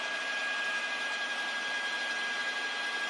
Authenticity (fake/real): real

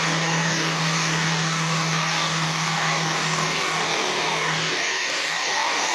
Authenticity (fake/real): fake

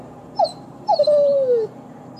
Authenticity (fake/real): real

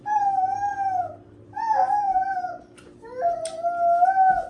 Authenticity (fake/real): real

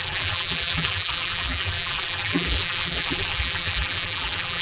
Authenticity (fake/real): fake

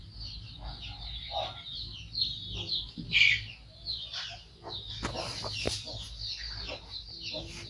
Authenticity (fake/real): real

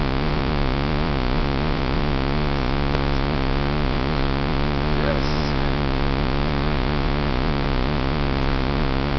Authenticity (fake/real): fake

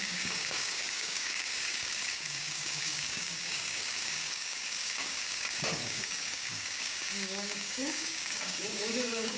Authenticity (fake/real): fake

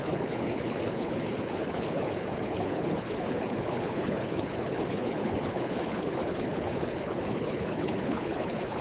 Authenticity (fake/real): fake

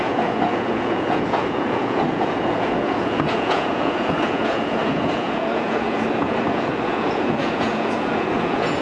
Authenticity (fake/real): fake